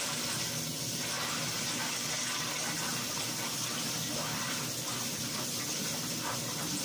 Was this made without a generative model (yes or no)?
yes